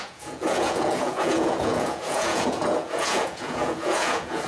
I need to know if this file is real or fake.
fake